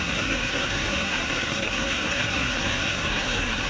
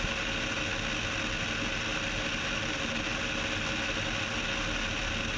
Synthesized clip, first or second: first